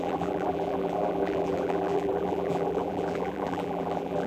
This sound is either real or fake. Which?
fake